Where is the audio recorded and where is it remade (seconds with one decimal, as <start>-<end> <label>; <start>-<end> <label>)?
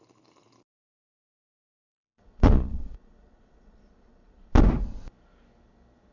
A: 0.0-0.8 recorded; 0.8-4.5 remade; 4.5-6.1 recorded